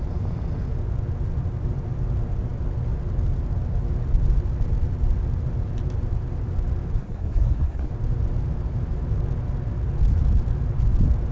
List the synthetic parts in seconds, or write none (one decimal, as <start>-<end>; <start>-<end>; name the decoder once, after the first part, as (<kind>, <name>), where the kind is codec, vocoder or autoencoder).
7.0-7.9 (codec, SNAC)